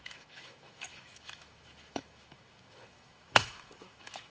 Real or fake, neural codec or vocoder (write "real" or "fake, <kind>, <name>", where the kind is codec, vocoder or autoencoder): fake, autoencoder, DAC-VAE